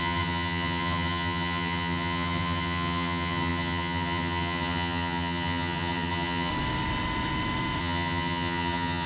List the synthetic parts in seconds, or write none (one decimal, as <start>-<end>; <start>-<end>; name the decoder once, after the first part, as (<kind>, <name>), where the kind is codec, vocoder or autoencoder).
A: 0.0-6.5 (vocoder, HiFi-GAN); 7.8-9.1